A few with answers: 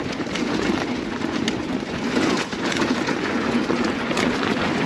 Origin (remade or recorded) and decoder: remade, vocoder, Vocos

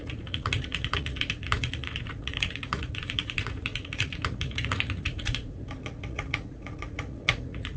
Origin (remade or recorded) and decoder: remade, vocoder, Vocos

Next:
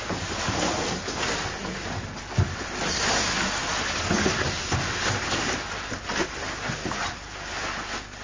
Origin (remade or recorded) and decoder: recorded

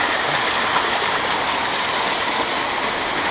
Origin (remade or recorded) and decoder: recorded